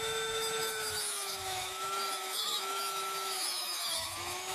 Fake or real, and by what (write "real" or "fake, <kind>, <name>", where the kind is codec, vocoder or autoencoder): fake, autoencoder, DAC-VAE